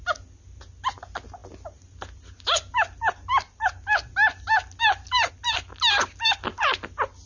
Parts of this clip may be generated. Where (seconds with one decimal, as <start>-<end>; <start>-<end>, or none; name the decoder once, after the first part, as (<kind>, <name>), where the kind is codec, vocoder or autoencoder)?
none